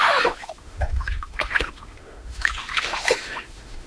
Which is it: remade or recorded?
remade